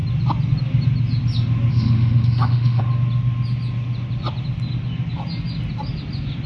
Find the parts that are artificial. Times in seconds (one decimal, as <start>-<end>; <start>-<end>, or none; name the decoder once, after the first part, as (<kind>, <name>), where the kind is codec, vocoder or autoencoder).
1.7-2.8 (autoencoder, DAC-VAE)